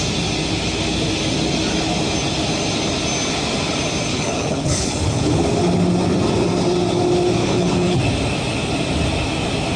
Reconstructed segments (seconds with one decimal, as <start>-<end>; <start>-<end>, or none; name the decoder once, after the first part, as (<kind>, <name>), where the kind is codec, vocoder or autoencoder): 4.1-5.4 (codec, HILCodec); 7.4-8.0